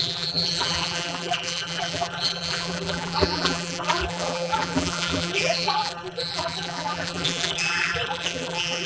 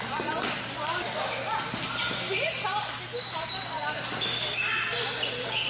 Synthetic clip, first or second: first